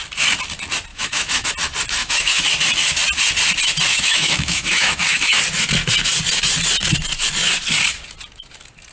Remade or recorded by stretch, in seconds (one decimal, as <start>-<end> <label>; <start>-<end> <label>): 0.0-0.9 recorded; 0.9-1.5 remade; 1.5-2.0 recorded; 2.0-2.5 remade; 2.5-3.9 recorded; 3.9-5.4 remade; 5.4-8.9 recorded